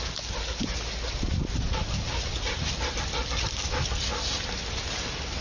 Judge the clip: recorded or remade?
recorded